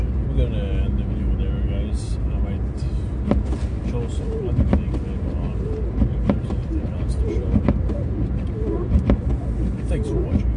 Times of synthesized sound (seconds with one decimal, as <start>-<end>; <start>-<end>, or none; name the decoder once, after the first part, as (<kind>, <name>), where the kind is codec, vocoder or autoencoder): none